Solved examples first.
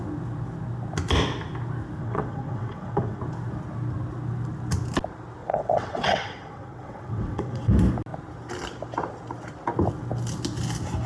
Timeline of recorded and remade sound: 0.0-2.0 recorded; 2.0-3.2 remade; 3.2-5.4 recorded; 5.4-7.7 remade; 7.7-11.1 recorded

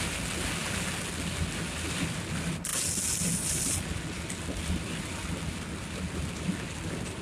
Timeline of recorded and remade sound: 0.0-7.2 recorded

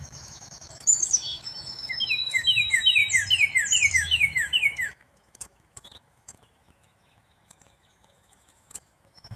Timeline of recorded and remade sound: 0.0-3.0 remade; 3.0-3.9 recorded; 3.9-9.4 remade